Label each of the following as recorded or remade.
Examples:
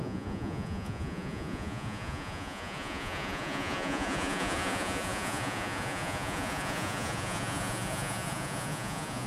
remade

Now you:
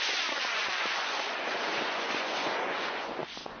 remade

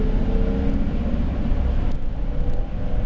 recorded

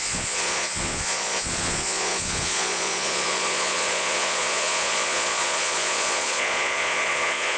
remade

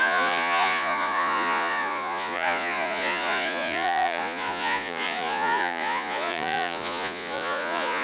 remade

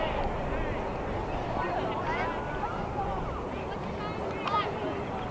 recorded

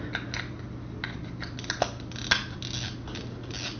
recorded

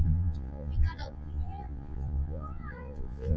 remade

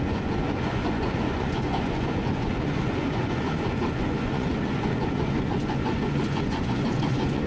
remade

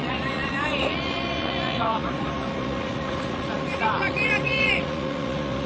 remade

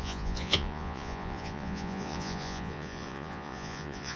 remade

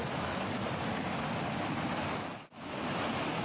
recorded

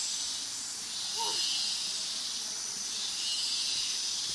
recorded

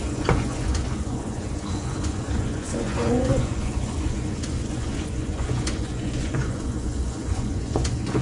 remade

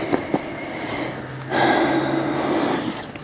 recorded